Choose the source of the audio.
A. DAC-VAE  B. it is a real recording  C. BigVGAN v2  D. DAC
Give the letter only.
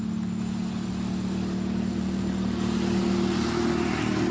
B